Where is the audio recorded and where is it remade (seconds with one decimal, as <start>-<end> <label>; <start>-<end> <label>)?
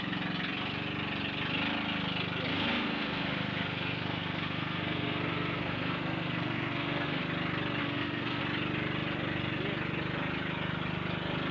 0.0-2.5 recorded; 2.5-7.2 remade; 7.2-7.8 recorded; 7.8-8.4 remade; 8.4-11.5 recorded